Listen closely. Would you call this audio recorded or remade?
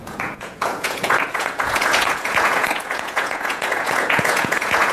remade